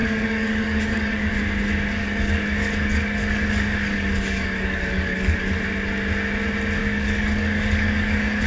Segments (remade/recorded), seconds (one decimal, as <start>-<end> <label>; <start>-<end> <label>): 0.0-1.3 remade; 1.3-2.0 recorded; 2.0-5.6 remade; 5.6-6.8 recorded; 6.8-8.5 remade